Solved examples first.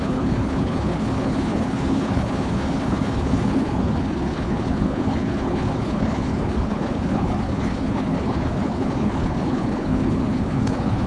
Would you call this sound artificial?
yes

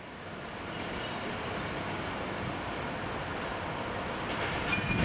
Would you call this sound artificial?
no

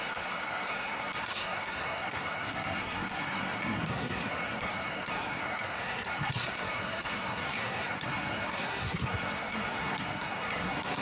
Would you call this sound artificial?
yes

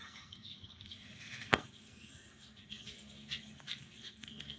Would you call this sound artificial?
yes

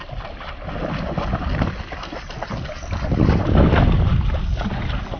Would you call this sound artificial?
no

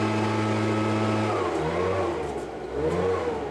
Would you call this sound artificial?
no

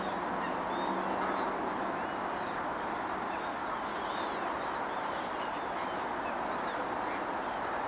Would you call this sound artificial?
no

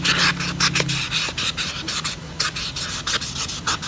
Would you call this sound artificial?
no